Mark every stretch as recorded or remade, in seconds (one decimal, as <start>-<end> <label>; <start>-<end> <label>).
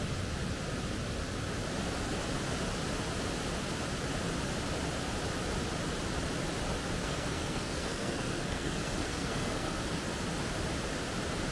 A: 0.0-7.0 recorded; 7.0-9.8 remade; 9.8-11.5 recorded